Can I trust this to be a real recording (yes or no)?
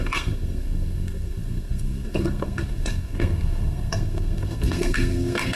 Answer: no